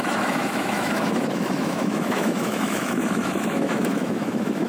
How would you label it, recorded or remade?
remade